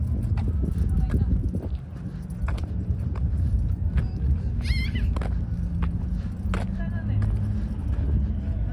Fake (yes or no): no